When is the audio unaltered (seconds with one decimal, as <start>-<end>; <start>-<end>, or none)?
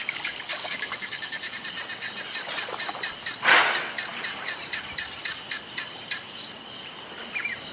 1.5-7.7